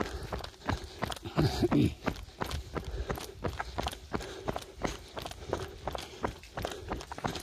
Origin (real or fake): real